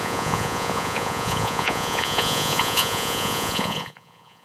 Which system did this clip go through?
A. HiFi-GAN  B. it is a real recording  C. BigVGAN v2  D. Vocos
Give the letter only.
D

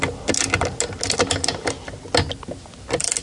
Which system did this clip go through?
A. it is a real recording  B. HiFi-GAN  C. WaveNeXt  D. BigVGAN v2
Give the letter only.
A